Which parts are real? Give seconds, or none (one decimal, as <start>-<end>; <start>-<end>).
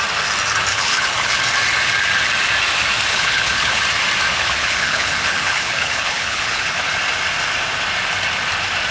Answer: 0.0-0.7; 1.4-3.1; 3.8-4.3; 6.7-8.9